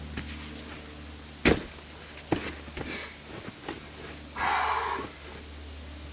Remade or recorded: recorded